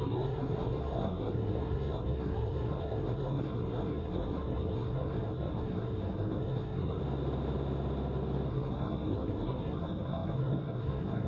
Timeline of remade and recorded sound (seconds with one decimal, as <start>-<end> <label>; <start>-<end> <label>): 0.0-7.0 remade; 7.0-8.5 recorded; 8.5-11.3 remade